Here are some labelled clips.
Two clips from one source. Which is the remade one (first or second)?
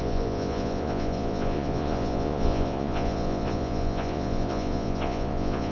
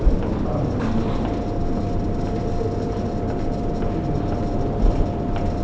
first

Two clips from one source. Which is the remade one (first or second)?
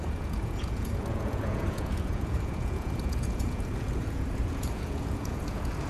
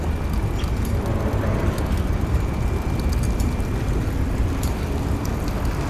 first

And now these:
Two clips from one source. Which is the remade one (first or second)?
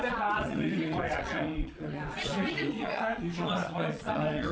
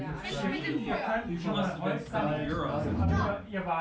first